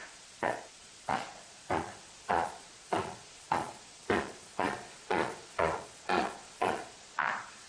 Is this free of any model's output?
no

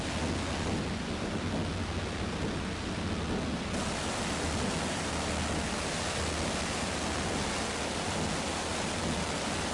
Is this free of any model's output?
yes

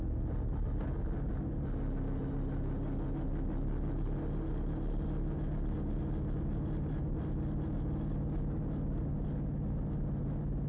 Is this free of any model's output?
yes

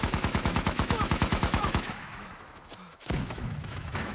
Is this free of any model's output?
no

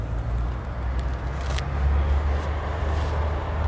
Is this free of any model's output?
yes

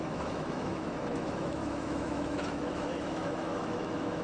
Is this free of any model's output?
no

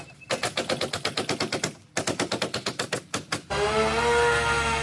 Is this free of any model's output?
yes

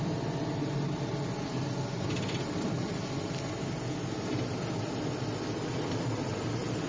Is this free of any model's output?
yes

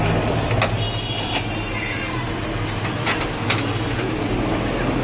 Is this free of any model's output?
yes